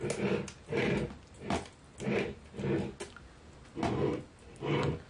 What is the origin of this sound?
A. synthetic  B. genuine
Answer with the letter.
B